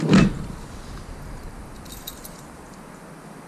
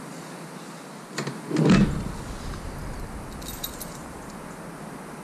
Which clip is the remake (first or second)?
first